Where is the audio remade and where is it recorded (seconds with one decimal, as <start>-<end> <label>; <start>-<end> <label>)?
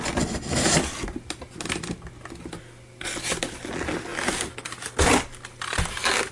0.0-6.3 recorded